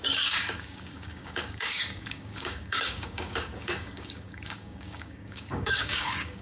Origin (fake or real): fake